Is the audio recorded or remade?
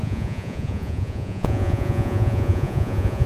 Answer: remade